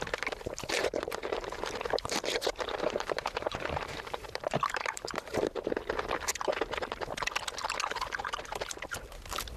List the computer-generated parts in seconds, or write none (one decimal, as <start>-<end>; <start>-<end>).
0.8-5.8

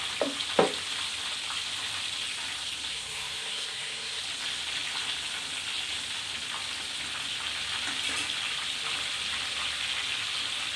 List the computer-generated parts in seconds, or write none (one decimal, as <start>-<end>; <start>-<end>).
2.9-4.2